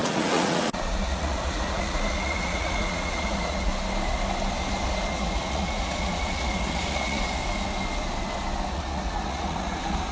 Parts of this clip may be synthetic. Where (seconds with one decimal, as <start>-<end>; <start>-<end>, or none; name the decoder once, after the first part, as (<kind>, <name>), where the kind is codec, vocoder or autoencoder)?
0.0-3.7 (vocoder, Vocos); 5.1-7.4; 8.7-10.1